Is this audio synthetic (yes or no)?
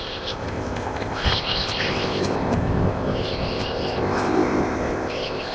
yes